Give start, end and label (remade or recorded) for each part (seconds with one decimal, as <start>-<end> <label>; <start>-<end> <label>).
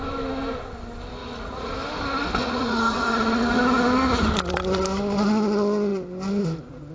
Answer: 0.0-1.2 recorded; 1.2-1.7 remade; 1.7-2.4 recorded; 2.4-3.6 remade; 3.6-6.9 recorded